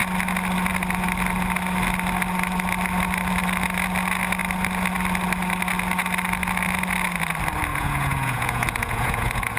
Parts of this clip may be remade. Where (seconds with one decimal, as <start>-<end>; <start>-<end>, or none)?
7.7-9.6